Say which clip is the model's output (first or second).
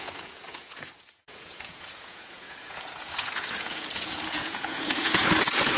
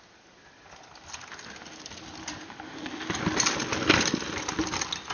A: first